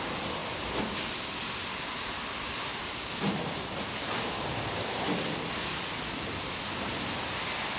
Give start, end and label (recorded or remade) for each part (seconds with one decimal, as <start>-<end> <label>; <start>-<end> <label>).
0.0-7.8 recorded